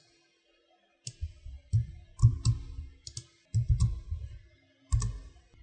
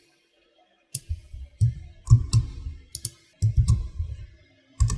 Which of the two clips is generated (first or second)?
second